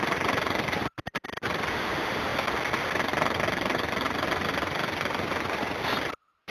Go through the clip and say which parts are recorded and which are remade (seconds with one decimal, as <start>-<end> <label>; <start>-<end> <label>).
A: 0.0-6.5 recorded